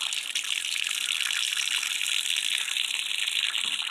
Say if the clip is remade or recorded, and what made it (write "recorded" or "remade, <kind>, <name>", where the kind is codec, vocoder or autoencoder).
recorded